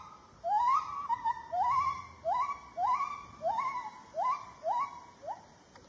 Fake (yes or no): no